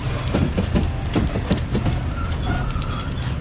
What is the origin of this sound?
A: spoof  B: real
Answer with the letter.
B